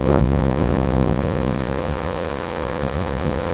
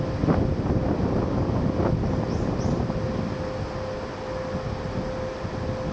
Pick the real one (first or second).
second